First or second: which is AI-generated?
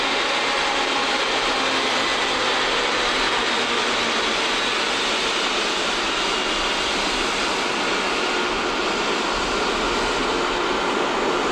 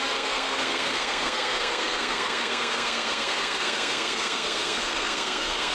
second